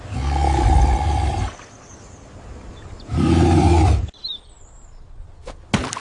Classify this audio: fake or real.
real